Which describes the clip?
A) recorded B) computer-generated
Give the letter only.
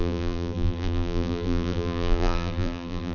B